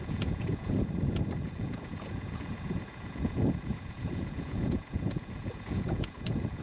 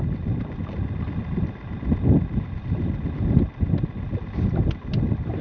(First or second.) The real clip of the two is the second